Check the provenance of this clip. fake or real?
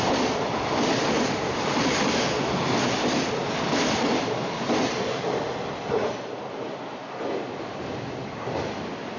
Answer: real